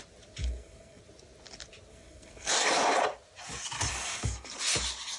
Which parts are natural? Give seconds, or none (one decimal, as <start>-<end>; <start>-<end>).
0.0-0.4; 1.0-1.9; 2.5-3.9; 4.5-5.2